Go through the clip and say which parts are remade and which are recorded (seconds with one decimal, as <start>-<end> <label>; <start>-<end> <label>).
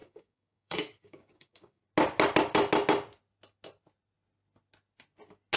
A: 0.0-1.8 remade; 1.8-5.6 recorded